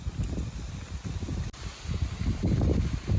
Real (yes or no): yes